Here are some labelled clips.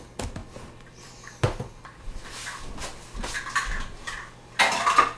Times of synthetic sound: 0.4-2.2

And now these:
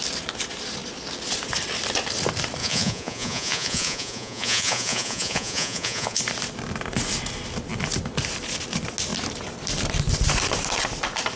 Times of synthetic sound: 2.6-6.2